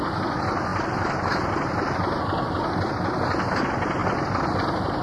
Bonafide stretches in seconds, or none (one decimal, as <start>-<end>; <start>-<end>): 0.0-4.0; 4.5-5.0